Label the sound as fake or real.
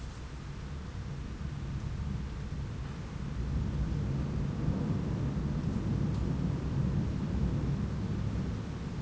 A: real